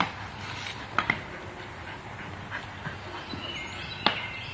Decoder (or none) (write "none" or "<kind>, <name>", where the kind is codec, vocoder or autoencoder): none